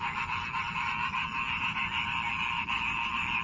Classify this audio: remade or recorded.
recorded